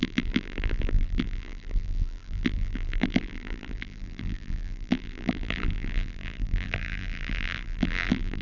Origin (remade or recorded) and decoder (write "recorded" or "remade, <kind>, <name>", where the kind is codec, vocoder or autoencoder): remade, vocoder, BigVGAN v2